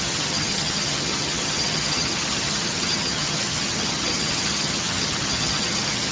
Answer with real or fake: fake